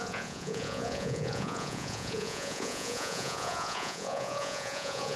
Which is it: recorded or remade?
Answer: remade